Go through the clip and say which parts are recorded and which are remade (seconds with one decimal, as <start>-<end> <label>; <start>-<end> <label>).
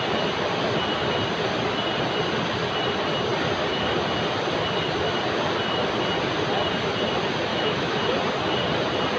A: 0.0-7.5 recorded; 7.5-8.0 remade; 8.0-9.2 recorded